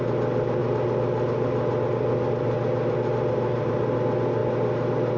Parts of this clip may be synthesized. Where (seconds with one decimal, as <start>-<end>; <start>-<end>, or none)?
none